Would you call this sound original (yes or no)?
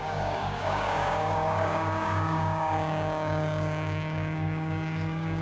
no